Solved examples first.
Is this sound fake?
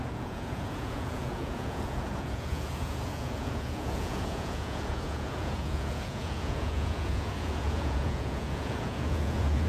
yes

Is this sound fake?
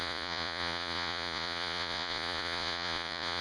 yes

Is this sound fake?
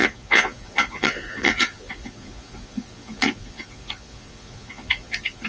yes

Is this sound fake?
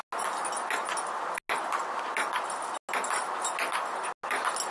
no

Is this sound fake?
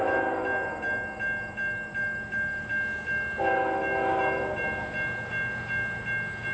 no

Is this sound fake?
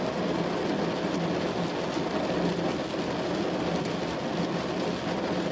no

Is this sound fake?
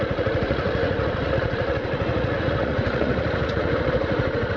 yes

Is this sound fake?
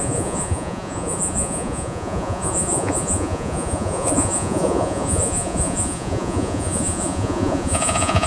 yes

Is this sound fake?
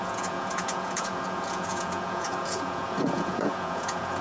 yes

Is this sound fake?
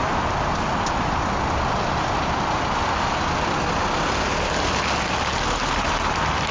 no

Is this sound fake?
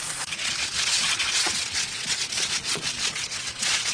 yes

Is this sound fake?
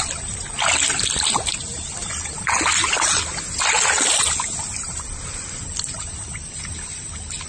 no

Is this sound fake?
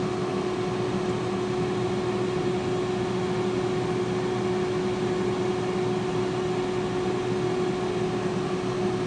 no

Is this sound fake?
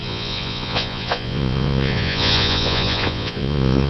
yes